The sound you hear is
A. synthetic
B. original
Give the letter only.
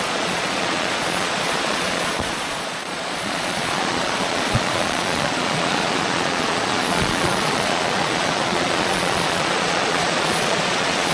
A